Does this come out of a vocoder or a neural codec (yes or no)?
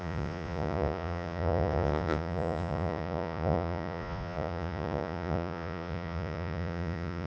yes